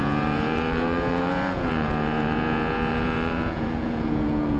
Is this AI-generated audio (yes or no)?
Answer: yes